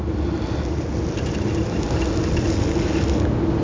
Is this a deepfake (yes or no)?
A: no